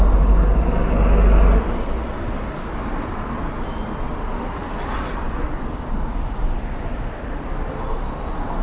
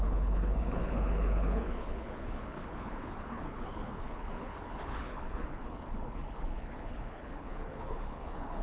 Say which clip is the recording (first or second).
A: first